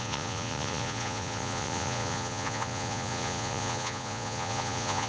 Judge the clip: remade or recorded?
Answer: remade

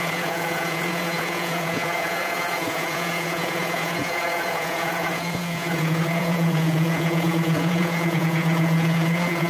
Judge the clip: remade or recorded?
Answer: remade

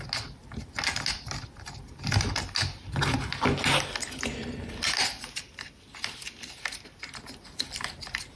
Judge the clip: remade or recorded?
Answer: recorded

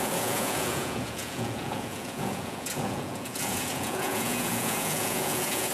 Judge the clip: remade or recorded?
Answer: remade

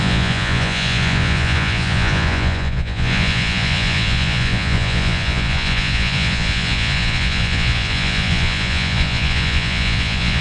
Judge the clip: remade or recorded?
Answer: remade